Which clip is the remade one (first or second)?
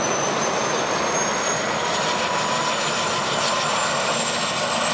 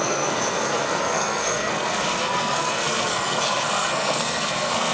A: second